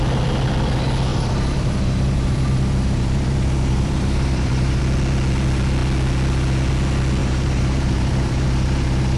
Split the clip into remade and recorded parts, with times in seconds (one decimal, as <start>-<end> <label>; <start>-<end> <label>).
0.0-1.1 recorded; 1.1-4.8 remade; 4.8-7.2 recorded; 7.2-9.2 remade